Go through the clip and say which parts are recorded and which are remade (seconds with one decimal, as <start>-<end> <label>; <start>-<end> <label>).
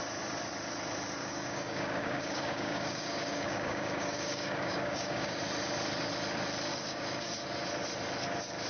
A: 0.0-1.2 recorded; 1.2-5.4 remade; 5.4-6.7 recorded; 6.7-7.3 remade; 7.3-8.7 recorded